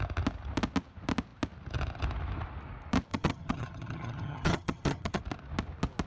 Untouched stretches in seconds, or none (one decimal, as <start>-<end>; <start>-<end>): 0.0-3.1; 5.2-6.1